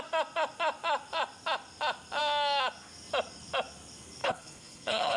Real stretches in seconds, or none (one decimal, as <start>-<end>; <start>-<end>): 0.0-4.2